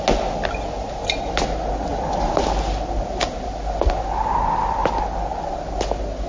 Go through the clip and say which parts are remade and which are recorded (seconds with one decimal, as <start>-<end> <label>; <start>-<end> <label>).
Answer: 0.0-1.9 recorded; 1.9-2.4 remade; 2.4-6.3 recorded